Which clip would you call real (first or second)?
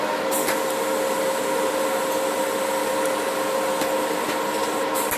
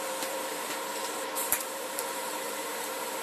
first